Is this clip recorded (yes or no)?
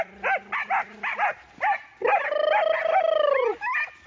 yes